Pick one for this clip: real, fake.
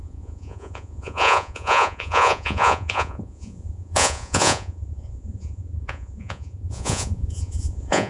fake